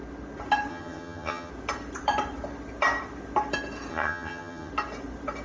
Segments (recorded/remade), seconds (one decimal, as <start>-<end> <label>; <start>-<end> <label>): 0.0-0.7 recorded; 0.7-1.5 remade; 1.5-3.9 recorded; 3.9-4.7 remade; 4.7-5.4 recorded